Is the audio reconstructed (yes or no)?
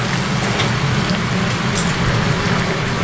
no